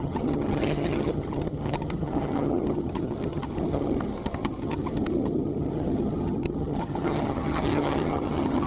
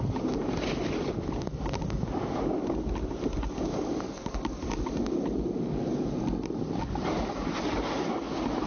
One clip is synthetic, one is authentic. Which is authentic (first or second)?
second